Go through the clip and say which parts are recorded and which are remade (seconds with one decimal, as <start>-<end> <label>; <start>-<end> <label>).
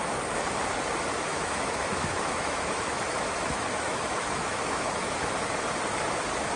0.0-1.3 recorded; 1.3-5.3 remade; 5.3-6.6 recorded